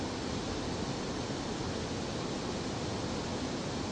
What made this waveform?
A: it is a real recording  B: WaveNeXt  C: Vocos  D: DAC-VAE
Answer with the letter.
A